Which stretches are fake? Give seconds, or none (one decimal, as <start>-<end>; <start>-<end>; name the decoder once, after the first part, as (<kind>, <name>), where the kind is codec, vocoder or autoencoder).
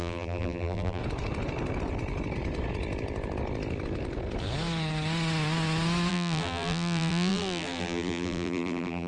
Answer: 0.0-1.0 (vocoder, BigVGAN v2); 6.1-9.1